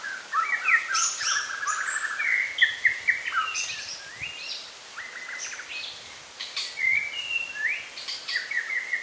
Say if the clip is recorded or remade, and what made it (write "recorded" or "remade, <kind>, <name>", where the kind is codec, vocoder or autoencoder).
recorded